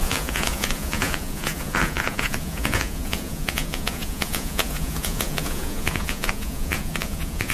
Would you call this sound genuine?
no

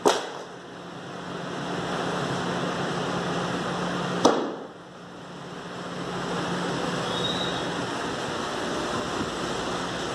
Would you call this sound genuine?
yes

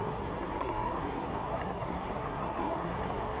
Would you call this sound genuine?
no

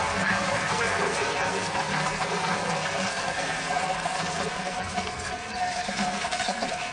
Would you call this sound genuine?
no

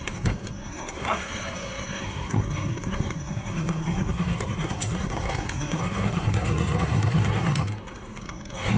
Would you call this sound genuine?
no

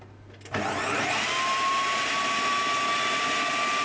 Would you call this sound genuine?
yes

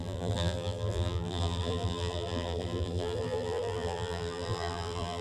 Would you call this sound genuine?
no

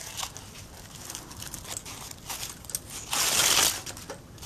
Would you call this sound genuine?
yes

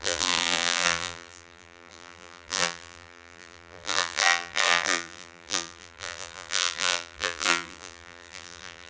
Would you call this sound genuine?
no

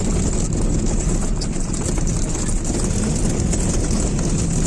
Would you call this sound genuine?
yes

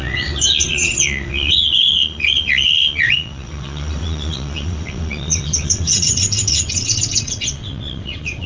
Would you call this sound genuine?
no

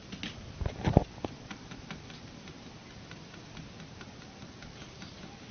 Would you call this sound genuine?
yes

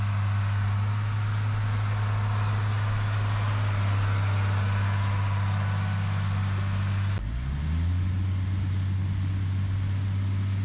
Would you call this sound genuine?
yes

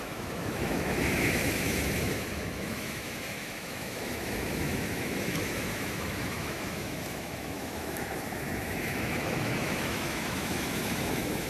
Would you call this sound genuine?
no